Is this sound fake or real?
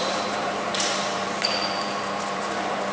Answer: fake